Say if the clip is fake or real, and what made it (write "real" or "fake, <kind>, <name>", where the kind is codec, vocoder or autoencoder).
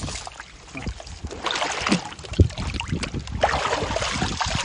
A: real